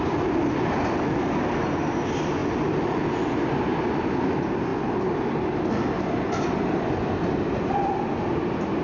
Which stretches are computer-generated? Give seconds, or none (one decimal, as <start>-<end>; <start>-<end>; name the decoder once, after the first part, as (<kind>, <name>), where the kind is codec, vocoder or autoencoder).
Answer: none